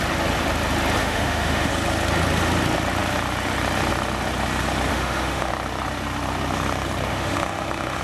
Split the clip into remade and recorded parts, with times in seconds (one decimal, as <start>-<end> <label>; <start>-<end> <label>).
0.0-1.0 recorded; 1.0-1.7 remade; 1.7-4.9 recorded; 4.9-5.5 remade; 5.5-7.1 recorded; 7.1-8.0 remade